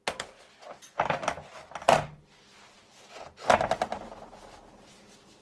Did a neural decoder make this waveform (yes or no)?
no